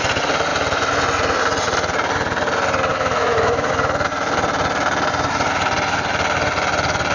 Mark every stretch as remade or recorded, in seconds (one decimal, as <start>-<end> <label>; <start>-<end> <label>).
0.0-2.9 recorded; 2.9-3.7 remade; 3.7-7.1 recorded